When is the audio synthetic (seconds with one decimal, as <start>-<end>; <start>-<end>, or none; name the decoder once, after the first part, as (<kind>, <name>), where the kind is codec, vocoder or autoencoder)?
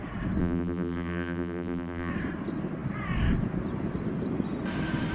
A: 0.4-2.1 (vocoder, BigVGAN v2)